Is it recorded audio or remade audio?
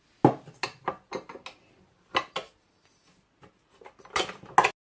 recorded